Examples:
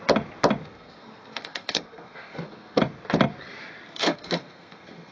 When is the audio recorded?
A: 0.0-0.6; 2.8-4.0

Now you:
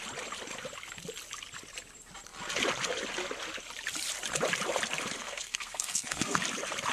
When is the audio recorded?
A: 0.0-5.2; 6.4-6.9

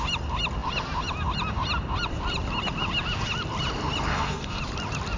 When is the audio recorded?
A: 0.0-4.1; 4.6-5.2

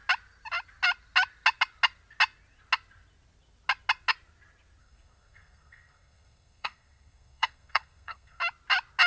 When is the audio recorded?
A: 0.0-4.8; 8.4-9.1

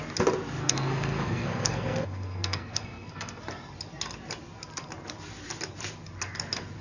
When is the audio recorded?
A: 0.0-0.6; 3.4-6.8

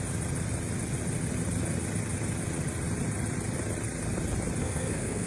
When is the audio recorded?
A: 0.0-4.6

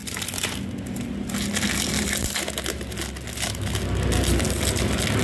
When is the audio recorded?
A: 0.0-5.2